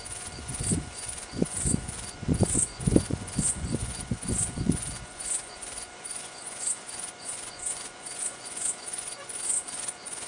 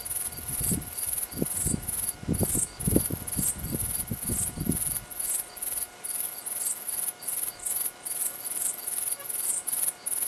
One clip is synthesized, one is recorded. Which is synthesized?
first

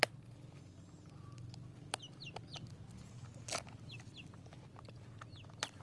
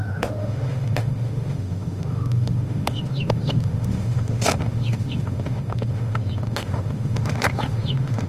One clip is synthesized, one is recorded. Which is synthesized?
second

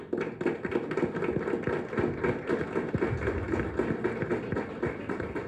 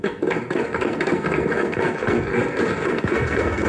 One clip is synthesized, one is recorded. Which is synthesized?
second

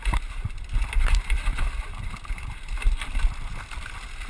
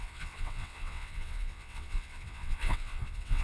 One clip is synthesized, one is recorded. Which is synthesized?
second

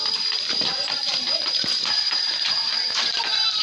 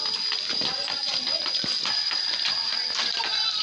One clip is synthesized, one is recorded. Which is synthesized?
first